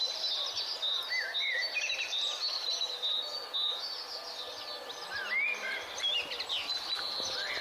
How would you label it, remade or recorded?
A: recorded